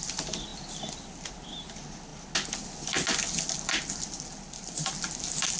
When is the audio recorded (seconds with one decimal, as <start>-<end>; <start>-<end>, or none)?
0.0-5.6